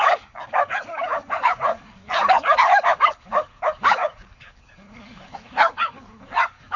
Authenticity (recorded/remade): remade